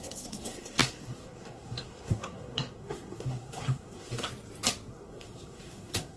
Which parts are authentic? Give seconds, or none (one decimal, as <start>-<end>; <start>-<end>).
4.3-4.9